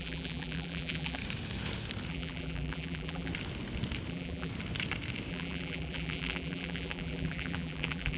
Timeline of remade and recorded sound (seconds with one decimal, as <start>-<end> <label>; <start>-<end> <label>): 0.0-1.2 remade; 1.2-2.1 recorded; 2.1-3.3 remade; 3.3-4.1 recorded; 4.1-4.5 remade; 4.5-5.3 recorded; 5.3-8.2 remade